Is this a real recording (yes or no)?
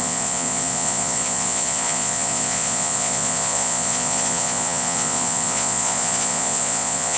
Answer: no